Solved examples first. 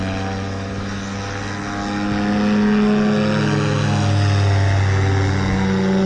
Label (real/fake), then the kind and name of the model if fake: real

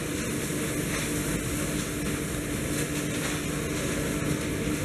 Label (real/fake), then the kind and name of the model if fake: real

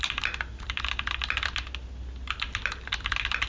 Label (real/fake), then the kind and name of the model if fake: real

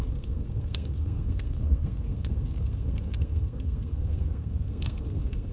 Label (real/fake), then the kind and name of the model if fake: fake, codec, SNAC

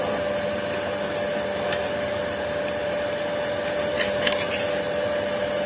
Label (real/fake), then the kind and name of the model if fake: real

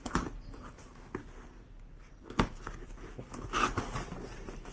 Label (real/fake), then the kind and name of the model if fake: real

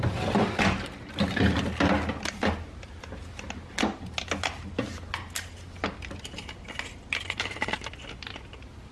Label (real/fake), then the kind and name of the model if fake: real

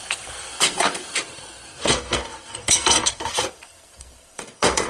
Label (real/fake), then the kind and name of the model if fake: fake, codec, SNAC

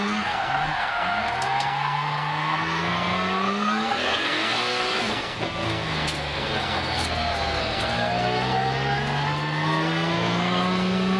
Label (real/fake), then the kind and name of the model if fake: fake, codec, SNAC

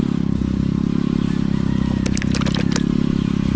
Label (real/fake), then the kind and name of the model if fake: real